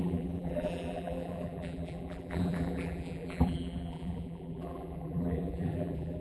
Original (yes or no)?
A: no